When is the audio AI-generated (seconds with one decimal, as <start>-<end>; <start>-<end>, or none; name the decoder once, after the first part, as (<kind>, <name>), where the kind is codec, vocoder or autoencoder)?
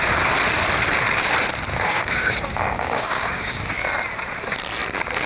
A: 1.7-3.7 (codec, DAC)